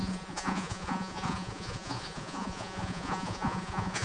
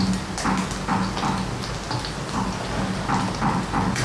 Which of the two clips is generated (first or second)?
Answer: first